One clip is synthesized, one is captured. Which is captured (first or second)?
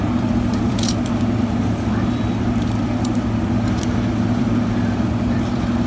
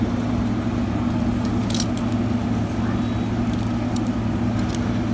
second